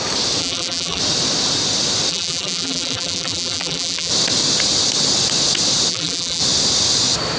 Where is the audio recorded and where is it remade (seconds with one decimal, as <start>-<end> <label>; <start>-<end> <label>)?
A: 0.0-0.4 recorded; 0.4-1.0 remade; 1.0-2.1 recorded; 2.1-4.1 remade; 4.1-5.9 recorded; 5.9-6.4 remade; 6.4-7.4 recorded